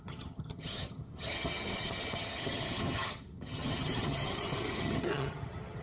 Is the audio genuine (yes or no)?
no